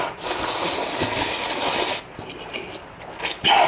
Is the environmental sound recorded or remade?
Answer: recorded